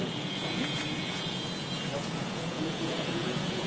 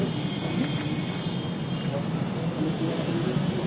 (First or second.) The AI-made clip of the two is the first